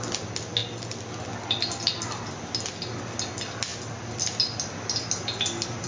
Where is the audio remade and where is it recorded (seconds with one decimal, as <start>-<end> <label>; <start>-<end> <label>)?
0.0-5.9 recorded